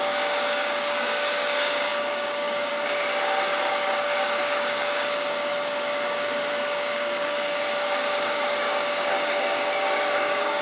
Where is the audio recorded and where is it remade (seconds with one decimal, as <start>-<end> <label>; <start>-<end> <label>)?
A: 0.0-10.6 remade